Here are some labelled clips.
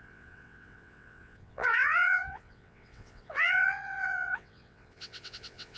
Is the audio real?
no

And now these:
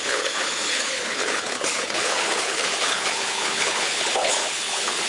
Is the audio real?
no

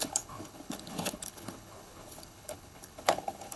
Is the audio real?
no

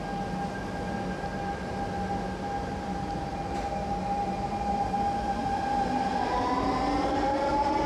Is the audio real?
yes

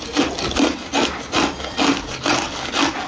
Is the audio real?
yes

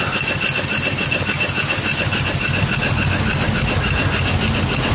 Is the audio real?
yes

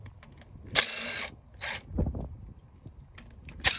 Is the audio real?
yes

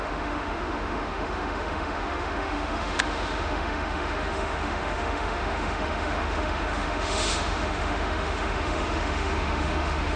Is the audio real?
no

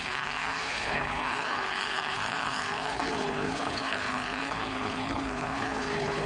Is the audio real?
no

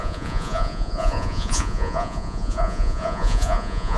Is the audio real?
no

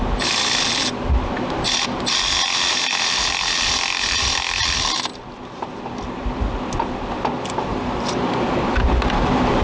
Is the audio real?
yes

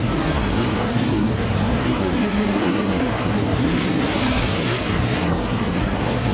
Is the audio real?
no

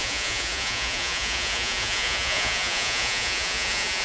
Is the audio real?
no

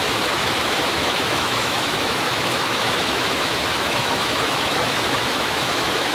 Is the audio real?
no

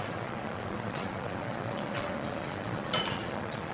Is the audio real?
no